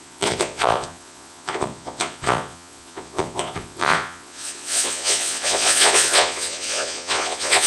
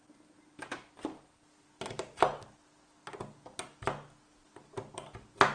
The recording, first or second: second